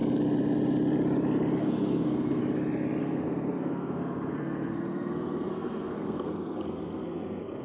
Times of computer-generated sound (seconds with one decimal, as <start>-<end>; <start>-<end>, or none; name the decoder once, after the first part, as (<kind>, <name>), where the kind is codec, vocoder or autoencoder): 1.6-2.4 (codec, SNAC); 3.0-7.6